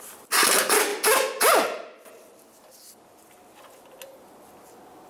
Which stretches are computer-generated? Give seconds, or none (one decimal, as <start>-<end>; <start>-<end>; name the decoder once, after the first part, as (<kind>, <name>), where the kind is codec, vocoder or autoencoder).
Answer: none